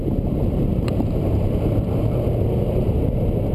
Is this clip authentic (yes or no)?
no